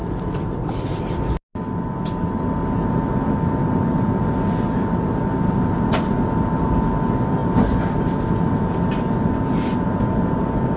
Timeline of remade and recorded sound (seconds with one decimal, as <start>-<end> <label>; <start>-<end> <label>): 0.0-10.8 recorded